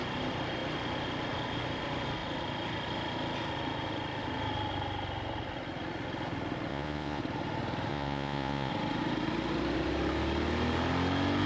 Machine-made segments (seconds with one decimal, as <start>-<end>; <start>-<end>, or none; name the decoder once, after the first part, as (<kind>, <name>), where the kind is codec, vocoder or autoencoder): 6.7-7.2 (vocoder, Vocos); 7.9-8.7